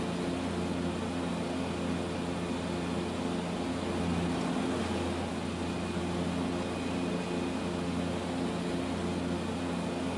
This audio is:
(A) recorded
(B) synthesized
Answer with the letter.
A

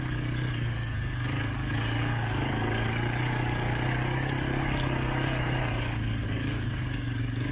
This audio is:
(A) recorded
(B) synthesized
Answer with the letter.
B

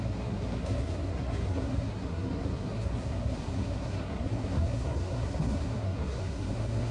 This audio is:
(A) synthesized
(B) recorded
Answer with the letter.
A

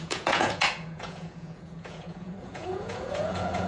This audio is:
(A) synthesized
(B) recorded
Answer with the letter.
A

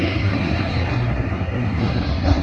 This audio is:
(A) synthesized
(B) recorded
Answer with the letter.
A